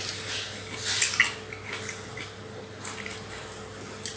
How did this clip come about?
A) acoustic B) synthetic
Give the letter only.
A